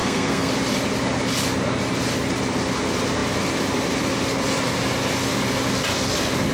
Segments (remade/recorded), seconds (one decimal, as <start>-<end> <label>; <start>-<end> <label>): 0.0-0.5 remade; 0.5-6.5 recorded

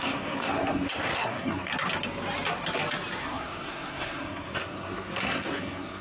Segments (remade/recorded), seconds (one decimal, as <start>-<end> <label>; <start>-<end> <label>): 0.0-1.7 remade; 1.7-3.2 recorded; 3.2-6.0 remade

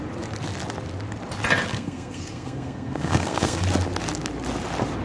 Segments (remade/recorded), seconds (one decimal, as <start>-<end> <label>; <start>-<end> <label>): 0.0-1.7 recorded; 1.7-3.6 remade; 3.6-5.0 recorded

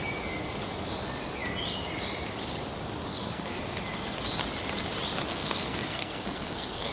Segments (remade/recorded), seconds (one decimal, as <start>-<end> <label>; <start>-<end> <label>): 0.0-3.1 recorded; 3.1-3.6 remade; 3.6-5.3 recorded; 5.3-6.9 remade

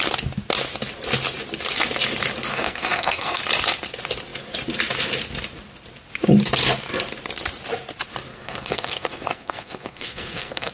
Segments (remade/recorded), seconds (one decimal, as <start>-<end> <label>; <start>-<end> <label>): 0.0-2.5 recorded; 2.5-3.4 remade; 3.4-8.3 recorded; 8.3-10.7 remade

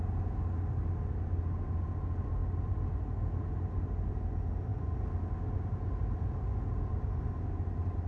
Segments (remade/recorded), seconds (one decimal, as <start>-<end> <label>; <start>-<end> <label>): 0.0-8.1 recorded

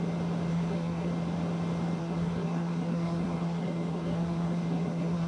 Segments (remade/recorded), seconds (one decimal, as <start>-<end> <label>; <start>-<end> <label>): 0.0-0.5 recorded; 0.5-1.1 remade; 1.1-2.0 recorded; 2.0-5.3 remade